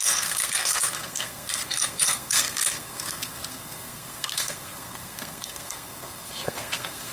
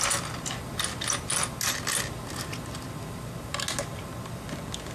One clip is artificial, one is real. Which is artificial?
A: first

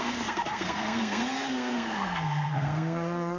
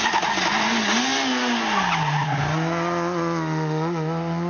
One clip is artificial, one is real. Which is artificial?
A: first